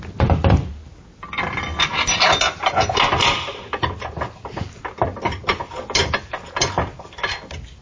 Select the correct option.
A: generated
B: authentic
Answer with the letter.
B